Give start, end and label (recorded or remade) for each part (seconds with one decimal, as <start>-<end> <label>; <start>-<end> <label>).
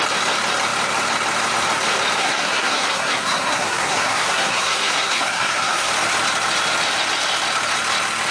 0.0-2.2 recorded; 2.2-5.9 remade; 5.9-8.3 recorded